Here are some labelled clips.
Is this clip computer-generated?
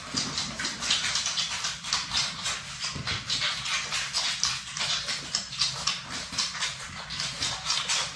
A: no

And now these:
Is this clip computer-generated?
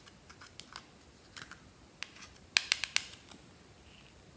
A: no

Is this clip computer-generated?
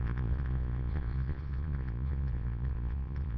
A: yes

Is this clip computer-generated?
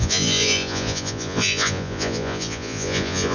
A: yes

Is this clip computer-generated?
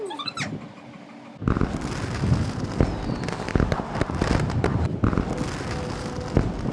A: no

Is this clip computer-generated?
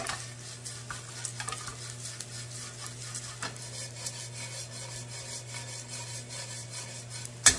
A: no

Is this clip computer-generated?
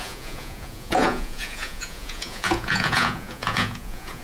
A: yes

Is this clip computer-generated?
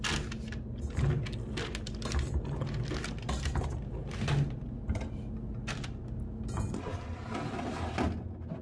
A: no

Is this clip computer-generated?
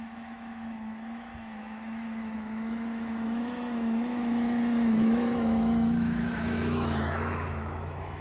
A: yes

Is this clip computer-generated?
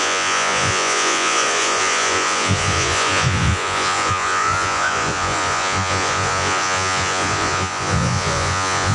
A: yes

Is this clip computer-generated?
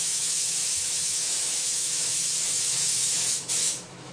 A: yes